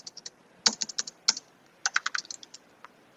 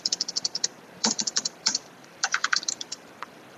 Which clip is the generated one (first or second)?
second